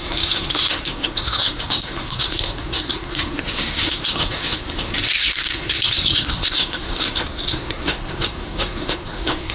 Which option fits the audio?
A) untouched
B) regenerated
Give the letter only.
B